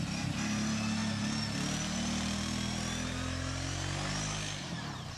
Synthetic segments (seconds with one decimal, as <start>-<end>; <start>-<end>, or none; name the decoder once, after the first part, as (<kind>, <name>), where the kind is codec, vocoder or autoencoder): none